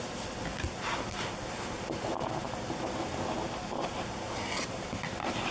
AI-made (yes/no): no